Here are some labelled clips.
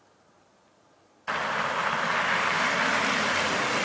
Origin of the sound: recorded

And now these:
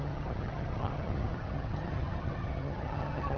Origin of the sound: remade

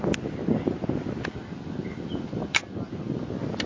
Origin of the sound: recorded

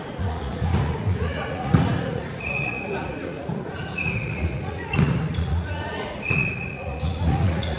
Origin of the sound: remade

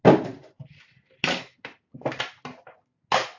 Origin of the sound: recorded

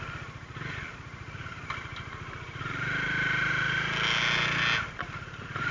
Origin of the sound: recorded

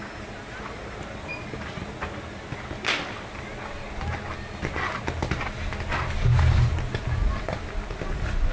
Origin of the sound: recorded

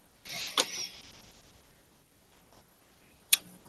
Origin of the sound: remade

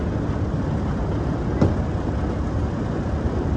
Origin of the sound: recorded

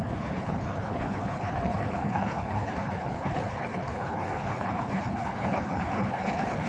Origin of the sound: remade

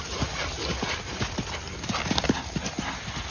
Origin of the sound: recorded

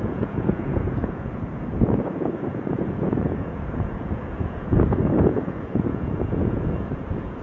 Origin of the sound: remade